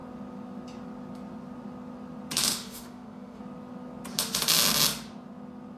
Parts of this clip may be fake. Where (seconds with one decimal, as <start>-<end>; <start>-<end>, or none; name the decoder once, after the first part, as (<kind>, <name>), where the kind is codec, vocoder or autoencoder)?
2.5-3.4 (autoencoder, DAC-VAE)